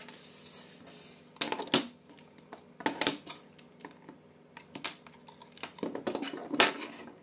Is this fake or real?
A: real